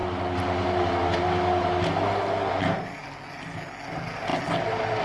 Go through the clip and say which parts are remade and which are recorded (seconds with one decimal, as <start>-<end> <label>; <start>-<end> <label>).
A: 0.0-5.0 recorded